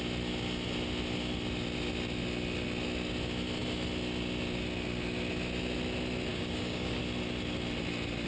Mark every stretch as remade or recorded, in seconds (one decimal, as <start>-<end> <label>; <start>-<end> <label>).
0.0-6.3 recorded; 6.3-7.0 remade; 7.0-8.3 recorded